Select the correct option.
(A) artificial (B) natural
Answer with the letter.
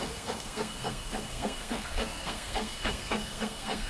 A